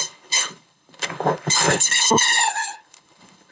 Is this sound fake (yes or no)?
yes